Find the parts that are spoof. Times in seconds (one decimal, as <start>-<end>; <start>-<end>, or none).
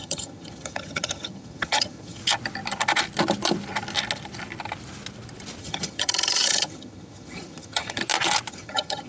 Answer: 0.0-2.2; 5.6-8.0; 8.5-9.1